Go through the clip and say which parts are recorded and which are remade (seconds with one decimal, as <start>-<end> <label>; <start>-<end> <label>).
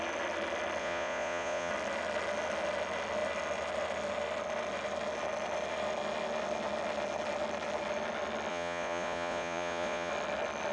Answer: 0.0-0.8 recorded; 0.8-1.7 remade; 1.7-8.5 recorded; 8.5-10.1 remade; 10.1-10.7 recorded